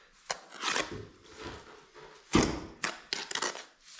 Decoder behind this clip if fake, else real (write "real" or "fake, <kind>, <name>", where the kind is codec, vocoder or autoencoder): real